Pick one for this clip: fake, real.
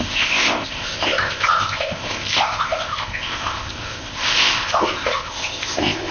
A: fake